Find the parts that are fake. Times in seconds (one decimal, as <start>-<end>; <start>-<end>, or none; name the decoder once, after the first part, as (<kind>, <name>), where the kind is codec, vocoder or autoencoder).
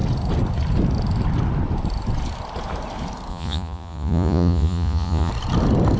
3.3-5.3 (vocoder, Vocos)